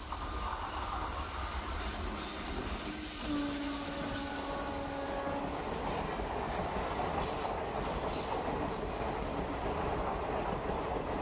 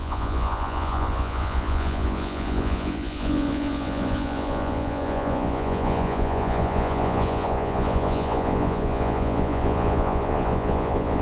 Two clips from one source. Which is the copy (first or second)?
second